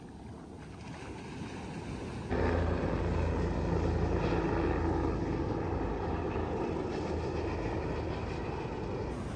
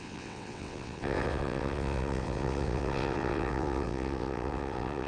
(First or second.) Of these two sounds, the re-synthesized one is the second